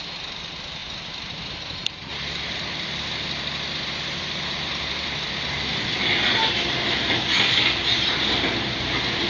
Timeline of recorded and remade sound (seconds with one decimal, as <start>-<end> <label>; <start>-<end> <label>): 0.0-0.8 recorded; 0.8-5.3 remade; 5.3-9.3 recorded